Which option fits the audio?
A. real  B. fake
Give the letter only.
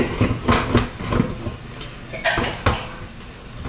A